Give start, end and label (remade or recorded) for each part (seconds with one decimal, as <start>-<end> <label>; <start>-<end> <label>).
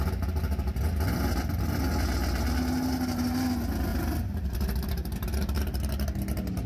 0.0-3.9 recorded; 3.9-5.6 remade; 5.6-6.7 recorded